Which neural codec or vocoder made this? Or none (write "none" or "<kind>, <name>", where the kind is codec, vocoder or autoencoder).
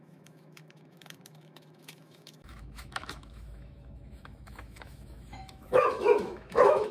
autoencoder, DAC-VAE